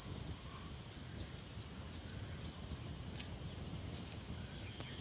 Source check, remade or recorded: recorded